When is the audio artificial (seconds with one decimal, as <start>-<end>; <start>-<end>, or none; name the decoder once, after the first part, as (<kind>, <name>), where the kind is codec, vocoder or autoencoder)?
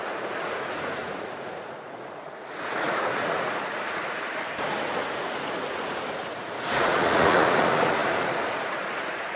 0.0-9.4 (vocoder, Vocos)